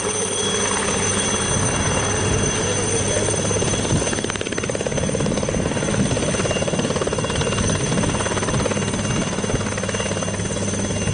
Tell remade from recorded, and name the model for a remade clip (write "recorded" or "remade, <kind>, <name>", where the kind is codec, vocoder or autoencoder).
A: recorded